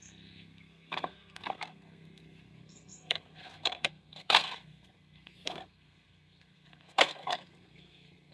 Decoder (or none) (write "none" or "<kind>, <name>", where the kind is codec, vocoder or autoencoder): codec, SNAC